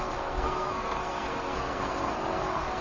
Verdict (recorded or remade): remade